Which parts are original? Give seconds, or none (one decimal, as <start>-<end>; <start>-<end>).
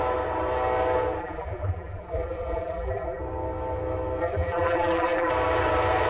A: 0.0-1.2; 3.2-4.2; 5.3-6.1